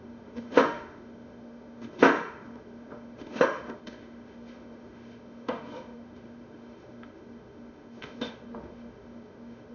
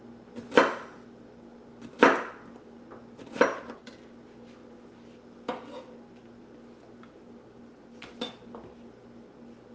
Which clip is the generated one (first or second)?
first